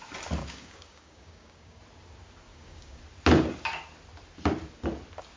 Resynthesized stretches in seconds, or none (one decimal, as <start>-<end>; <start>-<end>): 0.4-1.8; 2.5-3.0

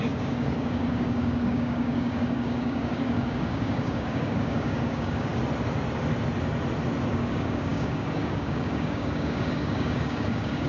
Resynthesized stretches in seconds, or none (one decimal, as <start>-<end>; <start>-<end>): 0.0-5.3; 7.1-10.7